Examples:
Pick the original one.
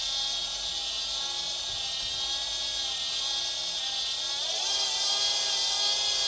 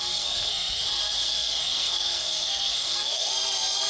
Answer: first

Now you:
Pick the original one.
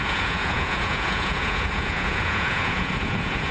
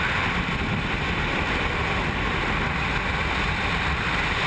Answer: second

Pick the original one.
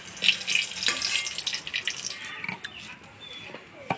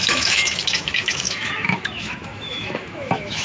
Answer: first